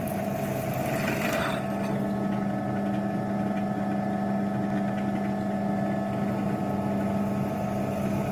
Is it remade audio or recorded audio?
recorded